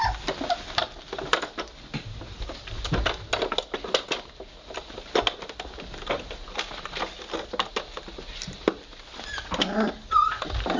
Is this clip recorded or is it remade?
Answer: recorded